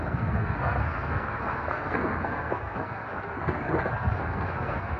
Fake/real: fake